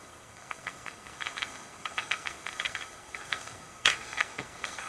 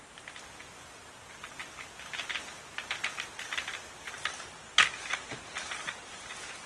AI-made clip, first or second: first